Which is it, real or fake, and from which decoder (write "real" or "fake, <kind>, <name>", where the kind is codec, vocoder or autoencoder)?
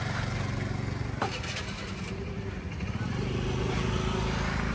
real